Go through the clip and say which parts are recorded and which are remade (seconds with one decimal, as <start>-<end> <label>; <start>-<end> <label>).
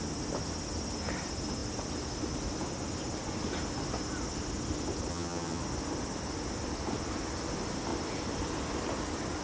0.0-5.1 recorded; 5.1-5.6 remade; 5.6-9.4 recorded